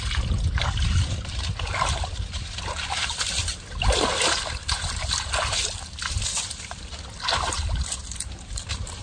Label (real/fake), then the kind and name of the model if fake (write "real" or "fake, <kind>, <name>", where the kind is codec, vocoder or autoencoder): real